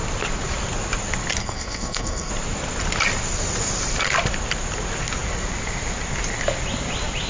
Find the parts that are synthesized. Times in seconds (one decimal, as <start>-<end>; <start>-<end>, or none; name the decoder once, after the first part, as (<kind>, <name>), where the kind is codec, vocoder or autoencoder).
1.4-2.3 (codec, SNAC)